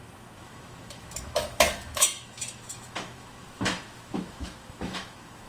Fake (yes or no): yes